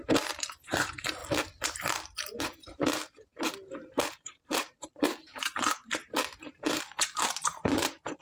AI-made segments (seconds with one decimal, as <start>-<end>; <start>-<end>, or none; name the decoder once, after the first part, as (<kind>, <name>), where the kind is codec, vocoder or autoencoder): 0.0-1.2 (vocoder, BigVGAN v2); 2.4-8.2

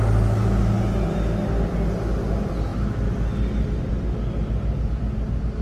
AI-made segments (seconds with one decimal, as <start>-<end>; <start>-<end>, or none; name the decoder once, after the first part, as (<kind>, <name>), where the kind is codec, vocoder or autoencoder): none

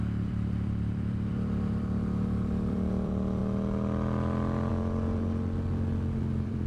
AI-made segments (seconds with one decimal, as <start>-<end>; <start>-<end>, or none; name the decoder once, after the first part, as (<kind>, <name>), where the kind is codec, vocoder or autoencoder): 0.0-3.4 (vocoder, BigVGAN v2); 4.7-6.7

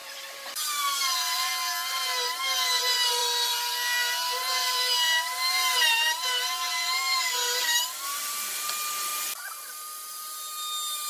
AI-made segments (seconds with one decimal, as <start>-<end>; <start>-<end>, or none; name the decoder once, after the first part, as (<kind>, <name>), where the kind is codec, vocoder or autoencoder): 0.0-1.5 (vocoder, BigVGAN v2); 3.2-8.3

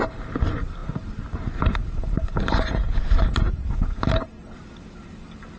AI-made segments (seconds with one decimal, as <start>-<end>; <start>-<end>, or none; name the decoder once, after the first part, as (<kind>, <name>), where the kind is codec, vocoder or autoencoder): 0.0-5.6 (vocoder, BigVGAN v2)